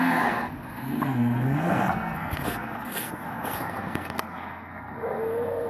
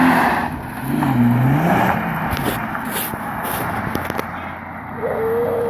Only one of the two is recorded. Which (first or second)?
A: second